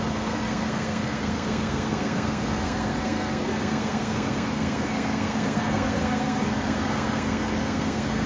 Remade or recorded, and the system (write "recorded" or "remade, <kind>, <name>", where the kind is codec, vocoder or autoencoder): remade, codec, SNAC